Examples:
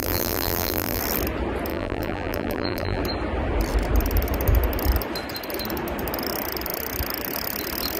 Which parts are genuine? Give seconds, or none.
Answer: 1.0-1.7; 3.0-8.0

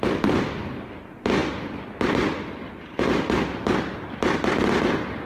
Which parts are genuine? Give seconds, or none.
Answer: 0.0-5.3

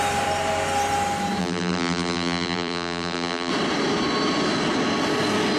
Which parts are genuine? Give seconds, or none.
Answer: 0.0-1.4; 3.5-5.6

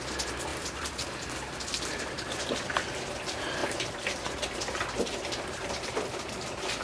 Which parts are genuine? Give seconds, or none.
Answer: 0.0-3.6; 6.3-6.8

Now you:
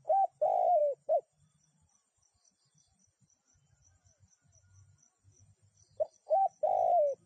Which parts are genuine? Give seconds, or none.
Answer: 0.0-0.8; 3.4-5.9; 6.4-7.3